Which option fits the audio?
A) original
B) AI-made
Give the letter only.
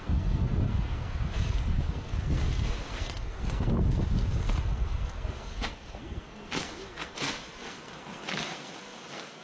B